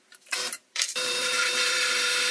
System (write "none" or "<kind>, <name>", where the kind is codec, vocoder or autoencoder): vocoder, BigVGAN v2